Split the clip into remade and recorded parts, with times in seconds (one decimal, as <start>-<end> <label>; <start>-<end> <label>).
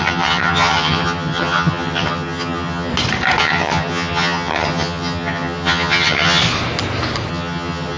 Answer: 0.0-2.9 remade; 2.9-3.4 recorded; 3.4-6.4 remade; 6.4-7.3 recorded; 7.3-8.0 remade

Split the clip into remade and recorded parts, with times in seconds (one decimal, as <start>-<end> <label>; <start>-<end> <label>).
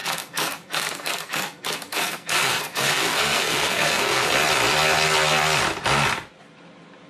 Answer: 0.0-4.3 remade; 4.3-7.1 recorded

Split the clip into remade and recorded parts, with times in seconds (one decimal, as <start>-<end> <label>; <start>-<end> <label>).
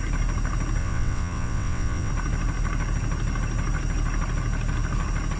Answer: 0.0-0.8 recorded; 0.8-2.1 remade; 2.1-5.4 recorded